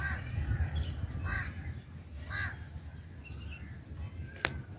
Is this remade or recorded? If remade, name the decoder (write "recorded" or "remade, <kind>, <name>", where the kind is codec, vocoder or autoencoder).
recorded